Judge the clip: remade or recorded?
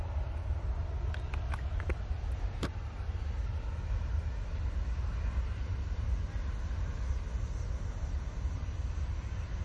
recorded